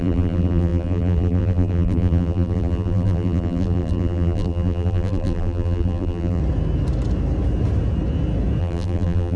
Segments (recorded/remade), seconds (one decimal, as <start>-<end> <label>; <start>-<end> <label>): 0.0-6.4 remade; 6.4-8.6 recorded; 8.6-9.4 remade